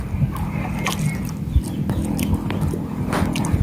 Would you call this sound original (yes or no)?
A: yes